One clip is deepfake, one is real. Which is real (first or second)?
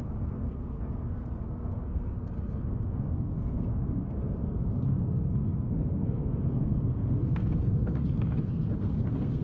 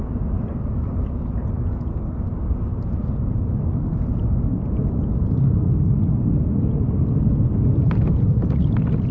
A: second